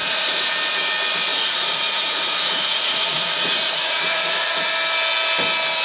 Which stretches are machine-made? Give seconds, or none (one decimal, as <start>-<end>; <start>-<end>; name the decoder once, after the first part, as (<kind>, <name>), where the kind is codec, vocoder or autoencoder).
0.0-0.5 (vocoder, Vocos); 1.3-4.7